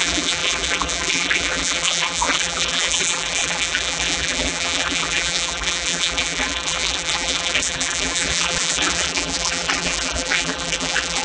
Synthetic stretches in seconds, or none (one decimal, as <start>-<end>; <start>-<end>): 0.0-11.2